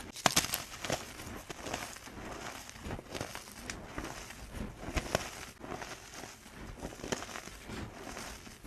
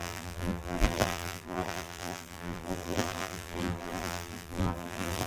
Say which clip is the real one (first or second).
first